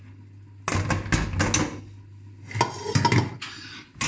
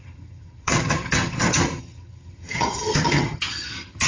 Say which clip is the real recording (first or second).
first